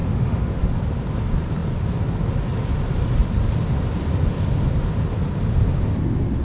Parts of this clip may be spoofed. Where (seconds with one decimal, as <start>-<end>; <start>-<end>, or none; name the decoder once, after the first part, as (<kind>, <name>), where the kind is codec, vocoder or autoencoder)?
0.0-0.6 (autoencoder, DAC-VAE)